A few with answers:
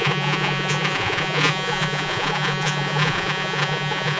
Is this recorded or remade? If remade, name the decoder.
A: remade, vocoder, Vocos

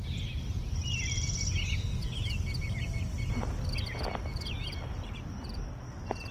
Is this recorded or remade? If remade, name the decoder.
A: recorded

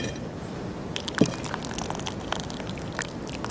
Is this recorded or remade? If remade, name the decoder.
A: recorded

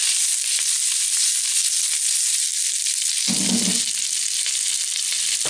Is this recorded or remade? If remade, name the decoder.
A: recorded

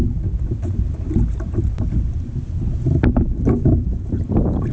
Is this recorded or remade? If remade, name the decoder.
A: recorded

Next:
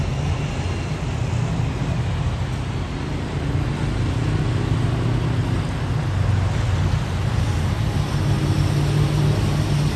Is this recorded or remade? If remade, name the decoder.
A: recorded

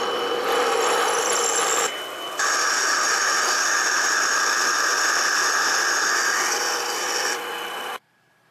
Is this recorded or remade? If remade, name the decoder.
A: recorded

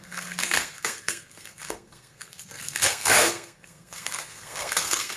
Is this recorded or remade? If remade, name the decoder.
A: remade, codec, SNAC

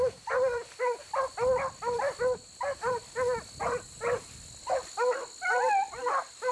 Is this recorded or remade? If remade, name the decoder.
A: recorded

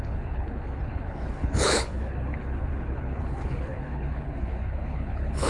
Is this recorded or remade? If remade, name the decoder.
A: remade, codec, HILCodec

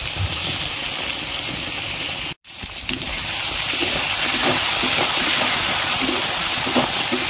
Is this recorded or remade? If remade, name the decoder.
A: recorded